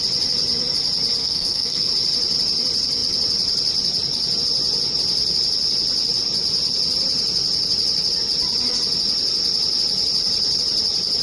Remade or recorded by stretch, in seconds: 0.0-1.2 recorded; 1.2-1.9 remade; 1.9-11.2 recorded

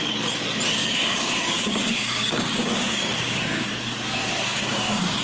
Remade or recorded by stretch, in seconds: 0.0-0.8 recorded; 0.8-3.7 remade; 3.7-4.2 recorded; 4.2-5.2 remade

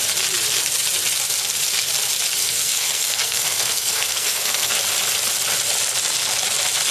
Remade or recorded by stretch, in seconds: 0.0-2.4 recorded; 2.4-4.7 remade; 4.7-6.9 recorded